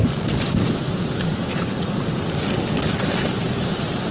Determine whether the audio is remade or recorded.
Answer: recorded